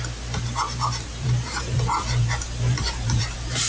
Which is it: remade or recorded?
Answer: remade